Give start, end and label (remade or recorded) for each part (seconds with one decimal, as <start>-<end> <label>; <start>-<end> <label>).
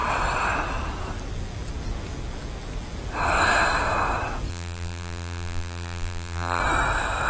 0.0-4.5 recorded; 4.5-6.6 remade; 6.6-7.3 recorded